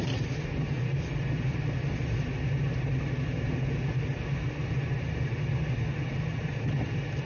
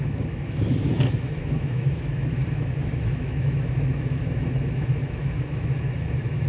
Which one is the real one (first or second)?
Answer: first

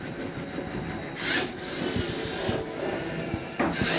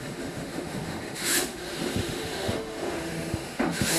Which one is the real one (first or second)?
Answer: first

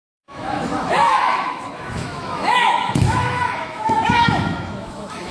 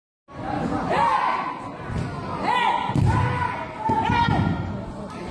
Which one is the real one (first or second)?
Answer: second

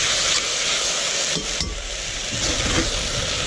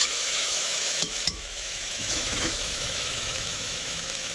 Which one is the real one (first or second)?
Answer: first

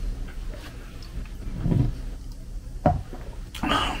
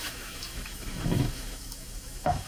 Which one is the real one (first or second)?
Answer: first